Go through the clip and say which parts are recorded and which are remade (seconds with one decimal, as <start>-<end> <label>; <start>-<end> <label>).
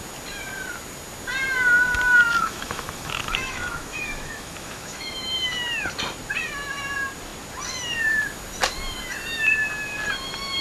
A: 0.0-2.4 recorded; 2.4-5.3 remade; 5.3-10.6 recorded